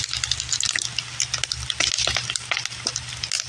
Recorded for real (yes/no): yes